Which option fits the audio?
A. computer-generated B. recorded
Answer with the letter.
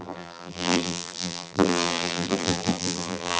A